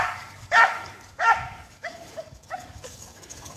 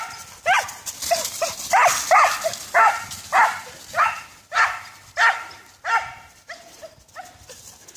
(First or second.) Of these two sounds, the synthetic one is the first